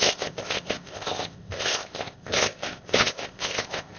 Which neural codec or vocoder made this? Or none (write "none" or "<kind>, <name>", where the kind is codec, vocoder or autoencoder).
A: codec, ZipCodec